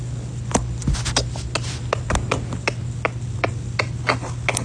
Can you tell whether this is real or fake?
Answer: real